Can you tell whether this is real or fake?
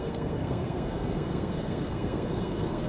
fake